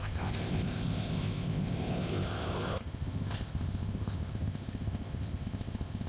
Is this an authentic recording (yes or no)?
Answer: no